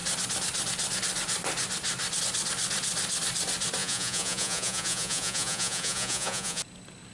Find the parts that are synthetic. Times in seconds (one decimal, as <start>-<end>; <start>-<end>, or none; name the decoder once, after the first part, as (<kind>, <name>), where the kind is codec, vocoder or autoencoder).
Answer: 3.8-6.6 (vocoder, Vocos)